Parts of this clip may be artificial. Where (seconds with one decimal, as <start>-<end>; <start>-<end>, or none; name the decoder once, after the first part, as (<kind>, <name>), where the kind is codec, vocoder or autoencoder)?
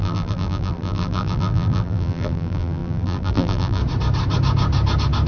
0.0-3.8 (vocoder, BigVGAN v2)